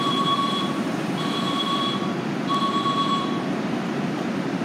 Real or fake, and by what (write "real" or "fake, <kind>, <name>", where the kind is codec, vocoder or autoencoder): fake, vocoder, BigVGAN v2